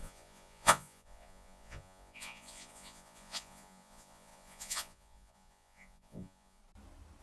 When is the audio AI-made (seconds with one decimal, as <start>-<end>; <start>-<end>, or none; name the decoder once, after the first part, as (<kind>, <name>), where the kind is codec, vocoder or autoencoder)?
0.0-6.6 (vocoder, Vocos)